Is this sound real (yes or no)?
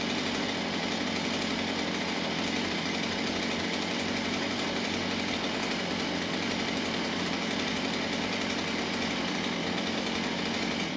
no